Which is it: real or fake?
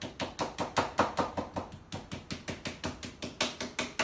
real